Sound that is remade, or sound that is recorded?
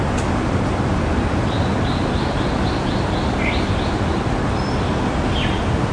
recorded